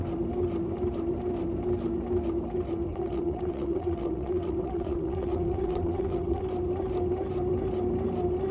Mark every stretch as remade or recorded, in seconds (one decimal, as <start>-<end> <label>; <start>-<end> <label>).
0.0-2.9 recorded; 2.9-6.4 remade; 6.4-8.5 recorded

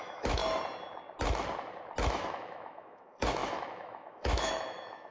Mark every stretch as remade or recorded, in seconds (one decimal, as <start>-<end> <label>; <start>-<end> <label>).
0.0-0.4 remade; 0.4-2.1 recorded; 2.1-5.1 remade

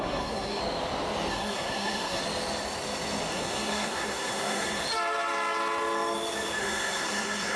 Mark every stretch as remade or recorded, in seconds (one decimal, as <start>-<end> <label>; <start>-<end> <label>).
0.0-0.6 remade; 0.6-1.3 recorded; 1.3-2.2 remade; 2.2-3.3 recorded; 3.3-4.8 remade; 4.8-6.6 recorded; 6.6-7.6 remade

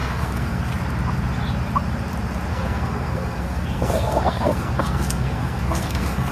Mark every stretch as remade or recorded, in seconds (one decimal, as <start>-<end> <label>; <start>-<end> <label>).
0.0-0.7 remade; 0.7-2.5 recorded; 2.5-6.3 remade

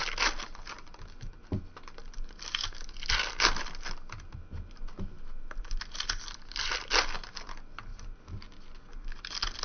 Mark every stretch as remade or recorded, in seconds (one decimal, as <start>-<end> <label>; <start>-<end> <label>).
0.0-9.6 recorded